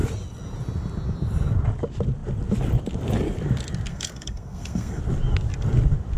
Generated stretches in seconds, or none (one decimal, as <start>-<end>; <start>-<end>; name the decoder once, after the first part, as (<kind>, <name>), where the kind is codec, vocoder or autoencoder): 3.9-5.0 (codec, SNAC)